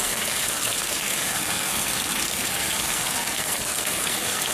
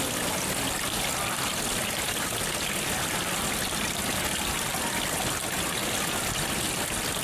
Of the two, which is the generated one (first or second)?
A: first